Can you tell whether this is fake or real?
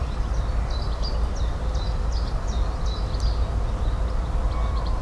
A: real